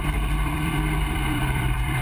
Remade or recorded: remade